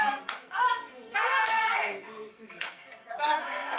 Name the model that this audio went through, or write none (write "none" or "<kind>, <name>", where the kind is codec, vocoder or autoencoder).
codec, SNAC